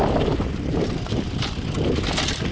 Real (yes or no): yes